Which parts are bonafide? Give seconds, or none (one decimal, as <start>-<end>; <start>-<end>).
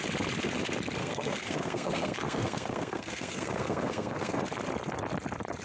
0.0-1.0; 4.4-5.6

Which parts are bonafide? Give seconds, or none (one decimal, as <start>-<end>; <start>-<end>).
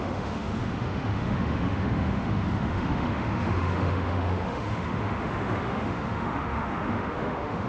none